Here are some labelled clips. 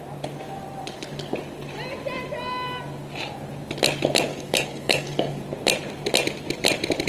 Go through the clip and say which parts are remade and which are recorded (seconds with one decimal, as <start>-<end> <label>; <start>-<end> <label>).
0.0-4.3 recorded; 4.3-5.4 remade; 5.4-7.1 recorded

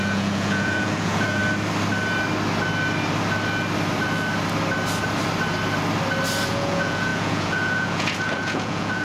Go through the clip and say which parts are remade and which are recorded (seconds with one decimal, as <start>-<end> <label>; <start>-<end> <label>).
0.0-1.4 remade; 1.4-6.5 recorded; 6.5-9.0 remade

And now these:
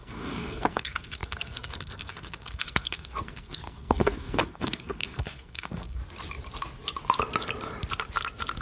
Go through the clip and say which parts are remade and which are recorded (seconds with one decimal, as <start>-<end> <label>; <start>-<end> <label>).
0.0-6.0 remade; 6.0-8.6 recorded

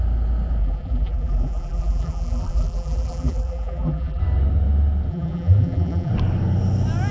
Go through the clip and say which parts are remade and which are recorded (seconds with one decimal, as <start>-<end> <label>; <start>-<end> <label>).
0.0-0.6 recorded; 0.6-4.2 remade; 4.2-5.1 recorded; 5.1-6.1 remade; 6.1-7.1 recorded

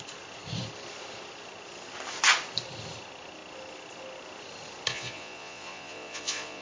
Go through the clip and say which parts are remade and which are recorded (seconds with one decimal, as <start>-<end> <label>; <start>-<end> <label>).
0.0-4.9 recorded; 4.9-6.6 remade

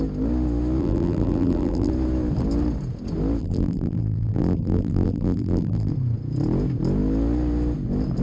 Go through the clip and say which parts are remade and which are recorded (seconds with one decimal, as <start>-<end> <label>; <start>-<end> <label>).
0.0-0.8 recorded; 0.8-1.9 remade; 1.9-3.4 recorded; 3.4-5.9 remade; 5.9-8.2 recorded

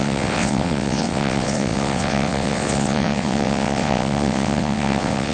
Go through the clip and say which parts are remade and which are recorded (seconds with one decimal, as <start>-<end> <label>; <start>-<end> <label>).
0.0-5.3 remade

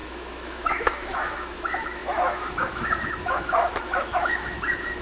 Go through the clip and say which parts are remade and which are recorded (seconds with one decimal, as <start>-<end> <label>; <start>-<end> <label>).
0.0-5.0 remade